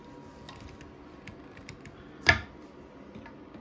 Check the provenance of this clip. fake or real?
real